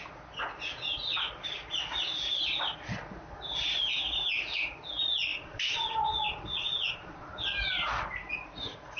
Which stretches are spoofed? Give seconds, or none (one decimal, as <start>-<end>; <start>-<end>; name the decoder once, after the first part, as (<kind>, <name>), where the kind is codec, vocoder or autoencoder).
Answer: 5.3-7.3 (vocoder, Vocos)